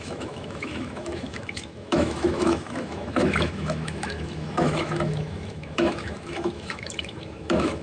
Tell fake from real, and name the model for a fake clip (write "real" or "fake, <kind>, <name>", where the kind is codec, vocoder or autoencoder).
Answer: fake, autoencoder, DAC-VAE